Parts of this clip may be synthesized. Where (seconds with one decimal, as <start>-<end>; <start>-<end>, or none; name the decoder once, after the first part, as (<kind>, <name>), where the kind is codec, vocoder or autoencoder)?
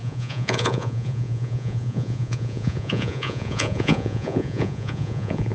0.0-5.5 (vocoder, Vocos)